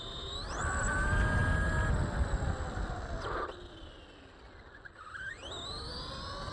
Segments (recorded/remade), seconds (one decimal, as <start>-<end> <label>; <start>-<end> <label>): 0.0-6.5 recorded